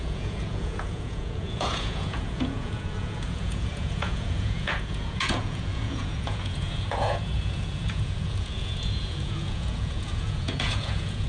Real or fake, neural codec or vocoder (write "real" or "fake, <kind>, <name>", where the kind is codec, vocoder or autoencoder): fake, vocoder, Vocos